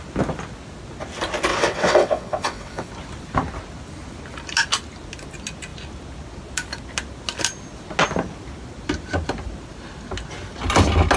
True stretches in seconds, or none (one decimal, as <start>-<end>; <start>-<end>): 0.0-1.5; 2.9-11.2